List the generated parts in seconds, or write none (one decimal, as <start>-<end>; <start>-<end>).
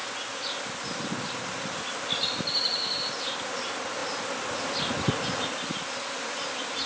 none